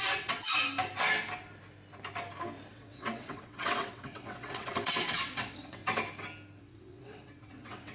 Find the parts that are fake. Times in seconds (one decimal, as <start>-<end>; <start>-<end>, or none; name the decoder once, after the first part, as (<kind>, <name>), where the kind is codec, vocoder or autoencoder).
0.0-0.6 (vocoder, WaveNeXt); 2.7-5.8; 6.6-7.9